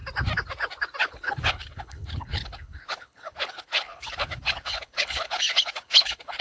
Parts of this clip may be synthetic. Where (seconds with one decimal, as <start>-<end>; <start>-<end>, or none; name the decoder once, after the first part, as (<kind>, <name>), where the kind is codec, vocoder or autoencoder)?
1.0-6.4 (codec, HILCodec)